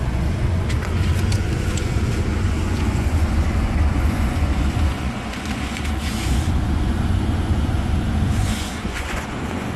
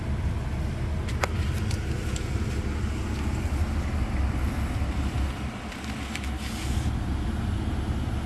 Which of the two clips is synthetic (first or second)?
first